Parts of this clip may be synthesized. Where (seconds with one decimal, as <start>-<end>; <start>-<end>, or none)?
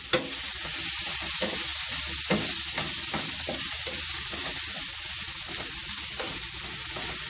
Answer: none